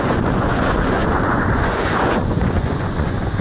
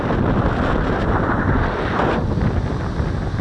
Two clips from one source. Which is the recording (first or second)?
second